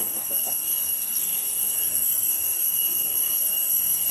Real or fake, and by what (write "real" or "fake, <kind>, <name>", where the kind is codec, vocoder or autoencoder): fake, codec, SNAC